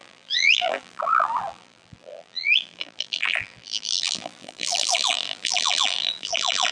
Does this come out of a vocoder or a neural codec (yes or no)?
yes